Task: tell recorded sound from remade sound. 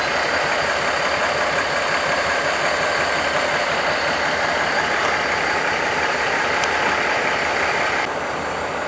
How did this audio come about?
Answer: recorded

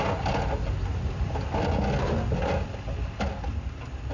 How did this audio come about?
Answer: recorded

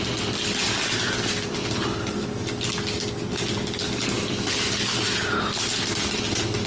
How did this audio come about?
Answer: recorded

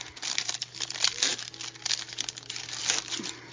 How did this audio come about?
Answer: recorded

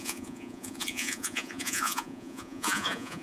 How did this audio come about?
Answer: remade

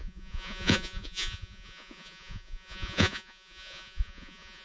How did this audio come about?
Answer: remade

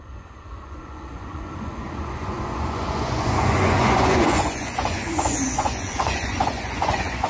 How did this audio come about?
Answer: remade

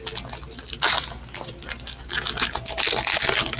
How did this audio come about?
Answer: recorded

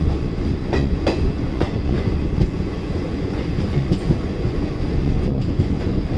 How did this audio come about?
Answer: remade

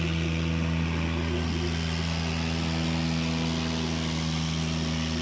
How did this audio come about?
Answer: recorded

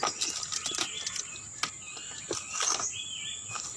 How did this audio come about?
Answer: recorded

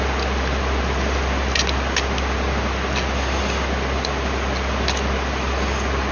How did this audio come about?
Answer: recorded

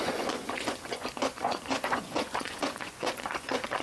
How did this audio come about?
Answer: remade